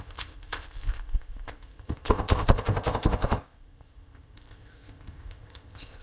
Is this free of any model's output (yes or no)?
no